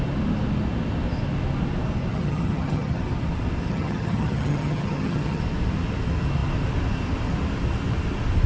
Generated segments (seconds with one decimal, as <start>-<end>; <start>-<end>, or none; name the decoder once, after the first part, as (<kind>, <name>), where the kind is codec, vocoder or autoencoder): 2.1-3.0 (vocoder, HiFi-GAN); 3.7-5.4